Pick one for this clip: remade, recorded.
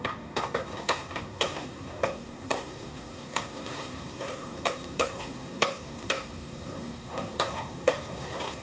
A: remade